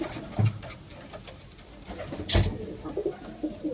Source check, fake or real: real